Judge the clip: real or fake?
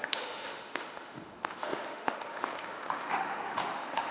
fake